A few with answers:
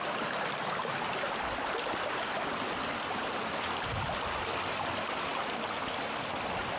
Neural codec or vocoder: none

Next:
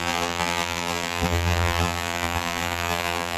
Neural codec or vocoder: vocoder, BigVGAN v2